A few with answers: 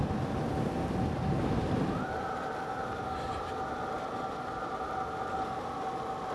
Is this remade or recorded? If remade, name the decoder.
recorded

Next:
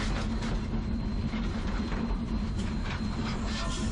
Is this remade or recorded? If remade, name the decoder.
remade, vocoder, BigVGAN v2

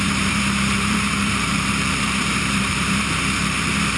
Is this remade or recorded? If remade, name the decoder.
remade, vocoder, BigVGAN v2